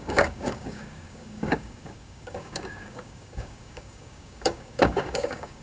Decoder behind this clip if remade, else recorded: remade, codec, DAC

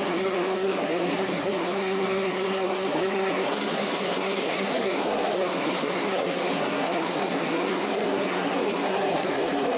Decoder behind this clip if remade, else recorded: remade, codec, SNAC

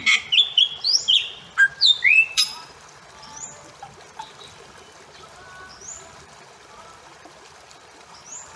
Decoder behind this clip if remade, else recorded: remade, vocoder, BigVGAN v2